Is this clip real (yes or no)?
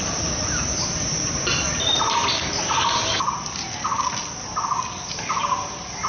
yes